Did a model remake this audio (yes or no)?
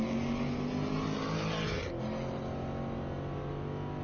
no